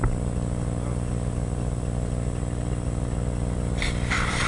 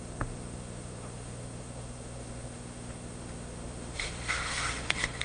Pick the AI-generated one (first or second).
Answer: second